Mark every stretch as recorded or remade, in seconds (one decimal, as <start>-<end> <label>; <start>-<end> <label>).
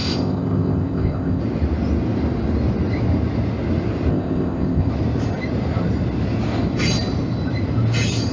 0.0-1.4 remade; 1.4-4.1 recorded; 4.1-4.9 remade; 4.9-8.3 recorded